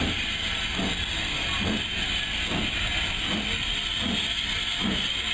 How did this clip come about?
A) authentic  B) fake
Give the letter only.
A